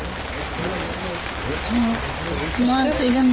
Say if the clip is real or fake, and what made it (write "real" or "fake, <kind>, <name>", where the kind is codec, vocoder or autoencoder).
real